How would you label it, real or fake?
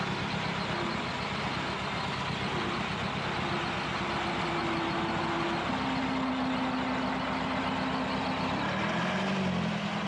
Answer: real